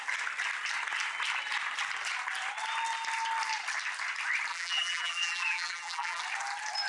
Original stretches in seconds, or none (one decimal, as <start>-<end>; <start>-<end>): 0.0-4.5; 6.2-6.9